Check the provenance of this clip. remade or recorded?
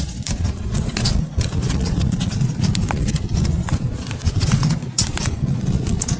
remade